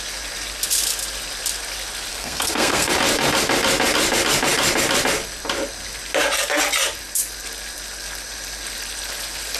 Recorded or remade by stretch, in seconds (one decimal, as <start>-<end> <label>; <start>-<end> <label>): 0.0-2.1 recorded; 2.1-2.9 remade; 2.9-9.6 recorded